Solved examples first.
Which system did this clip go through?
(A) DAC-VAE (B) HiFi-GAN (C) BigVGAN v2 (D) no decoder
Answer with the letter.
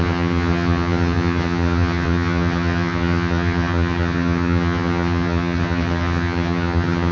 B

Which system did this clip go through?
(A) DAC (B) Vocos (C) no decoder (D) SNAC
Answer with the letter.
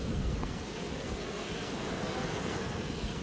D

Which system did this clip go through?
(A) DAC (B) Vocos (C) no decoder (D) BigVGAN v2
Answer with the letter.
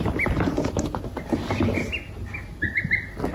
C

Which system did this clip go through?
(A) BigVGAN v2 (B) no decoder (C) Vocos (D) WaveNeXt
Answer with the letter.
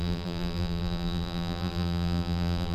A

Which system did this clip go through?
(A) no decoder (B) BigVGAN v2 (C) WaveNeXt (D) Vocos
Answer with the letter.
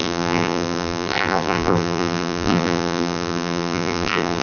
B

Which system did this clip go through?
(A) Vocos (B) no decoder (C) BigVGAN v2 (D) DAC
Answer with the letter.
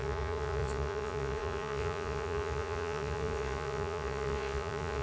A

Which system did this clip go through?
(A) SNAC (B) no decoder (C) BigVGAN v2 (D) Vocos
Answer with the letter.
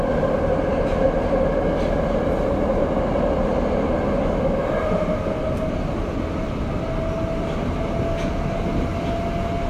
B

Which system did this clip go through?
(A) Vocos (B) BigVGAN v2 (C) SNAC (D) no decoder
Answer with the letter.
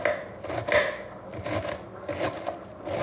D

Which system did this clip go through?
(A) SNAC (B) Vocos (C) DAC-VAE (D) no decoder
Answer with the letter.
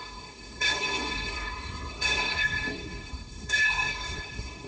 A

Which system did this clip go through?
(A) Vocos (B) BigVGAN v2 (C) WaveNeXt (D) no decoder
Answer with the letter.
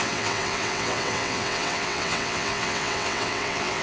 C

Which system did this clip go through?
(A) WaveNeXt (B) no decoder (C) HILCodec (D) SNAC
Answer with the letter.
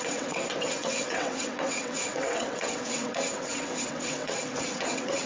A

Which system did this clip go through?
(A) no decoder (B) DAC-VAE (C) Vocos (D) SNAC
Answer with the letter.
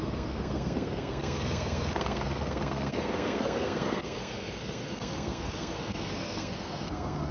D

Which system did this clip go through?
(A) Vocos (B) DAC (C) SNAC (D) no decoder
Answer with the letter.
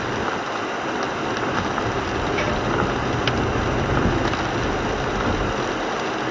D